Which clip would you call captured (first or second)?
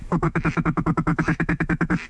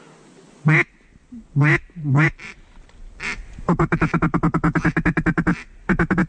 second